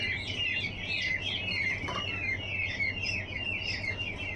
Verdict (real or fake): real